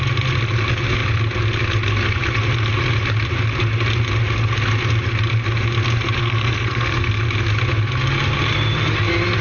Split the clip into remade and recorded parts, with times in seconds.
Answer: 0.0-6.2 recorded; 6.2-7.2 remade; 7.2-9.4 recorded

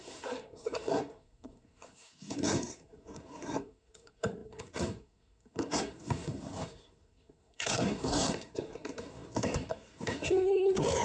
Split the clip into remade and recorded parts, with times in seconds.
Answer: 0.0-11.0 remade

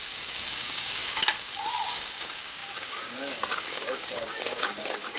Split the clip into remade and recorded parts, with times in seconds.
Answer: 0.0-5.2 remade

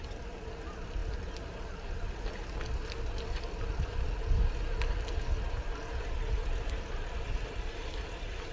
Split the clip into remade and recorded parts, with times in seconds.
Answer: 0.0-8.5 recorded

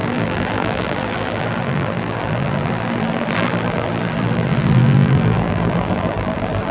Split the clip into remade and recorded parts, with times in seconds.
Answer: 0.0-6.7 remade

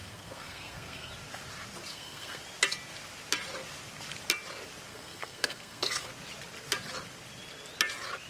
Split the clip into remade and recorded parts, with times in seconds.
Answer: 0.0-1.1 remade; 1.1-1.9 recorded; 1.9-2.4 remade; 2.4-4.9 recorded; 4.9-6.1 remade; 6.1-8.3 recorded